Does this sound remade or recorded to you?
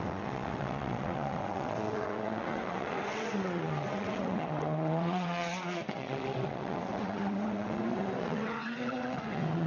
remade